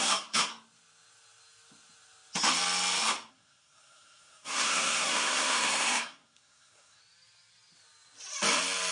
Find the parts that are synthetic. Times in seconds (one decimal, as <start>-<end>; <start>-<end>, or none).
0.0-0.5; 3.3-7.0